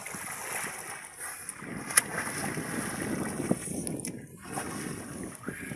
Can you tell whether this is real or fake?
real